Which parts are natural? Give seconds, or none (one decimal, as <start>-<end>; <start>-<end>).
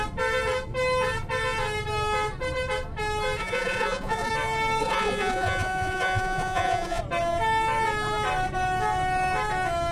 0.0-3.4; 4.3-4.8; 7.0-9.9